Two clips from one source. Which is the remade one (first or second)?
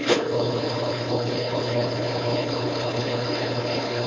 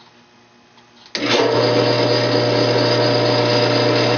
first